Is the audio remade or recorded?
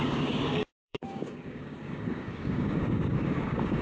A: remade